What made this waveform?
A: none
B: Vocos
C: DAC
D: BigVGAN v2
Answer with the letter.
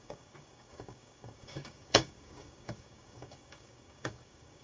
C